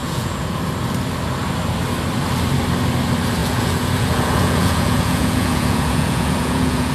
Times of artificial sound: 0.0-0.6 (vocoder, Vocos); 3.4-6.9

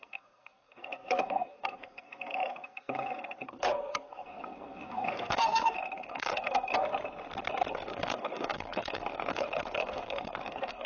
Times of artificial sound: 0.0-6.8 (codec, SNAC); 7.7-10.9

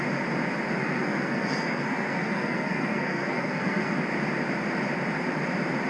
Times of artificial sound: 0.8-3.9 (codec, SNAC)

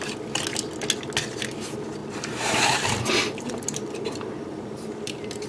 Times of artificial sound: 2.0-5.5 (vocoder, BigVGAN v2)